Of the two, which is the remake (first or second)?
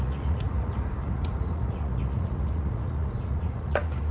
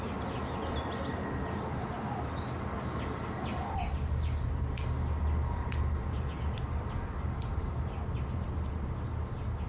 first